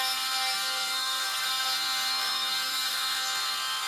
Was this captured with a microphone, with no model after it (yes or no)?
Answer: no